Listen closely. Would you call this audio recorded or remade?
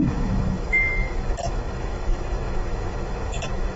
remade